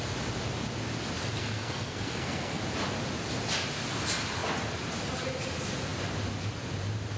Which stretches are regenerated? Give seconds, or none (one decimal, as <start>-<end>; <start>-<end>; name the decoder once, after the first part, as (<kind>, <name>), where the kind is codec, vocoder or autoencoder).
1.4-2.6 (codec, SNAC)